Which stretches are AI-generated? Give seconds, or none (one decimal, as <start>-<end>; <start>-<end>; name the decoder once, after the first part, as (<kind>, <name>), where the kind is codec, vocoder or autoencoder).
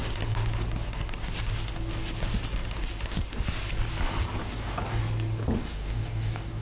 4.4-5.0 (codec, DAC); 5.7-6.6